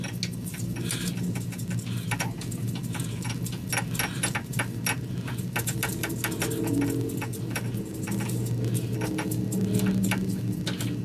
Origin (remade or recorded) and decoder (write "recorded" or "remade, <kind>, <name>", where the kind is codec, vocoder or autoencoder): recorded